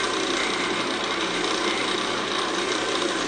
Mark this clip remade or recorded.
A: recorded